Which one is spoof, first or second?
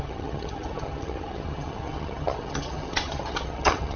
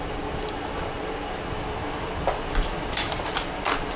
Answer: first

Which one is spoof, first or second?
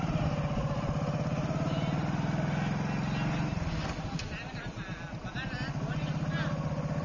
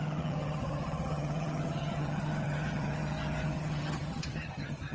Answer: second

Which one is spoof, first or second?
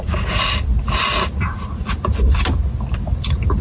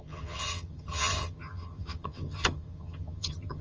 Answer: second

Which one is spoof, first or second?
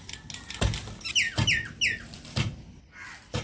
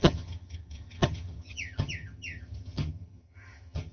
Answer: second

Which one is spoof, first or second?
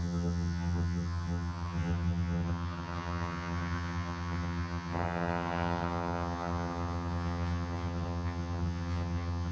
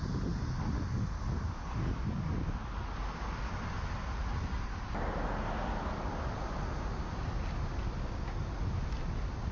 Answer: first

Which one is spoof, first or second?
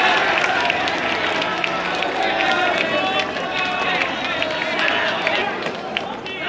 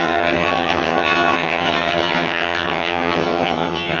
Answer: second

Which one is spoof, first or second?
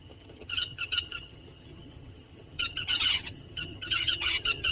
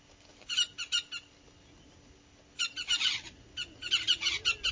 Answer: first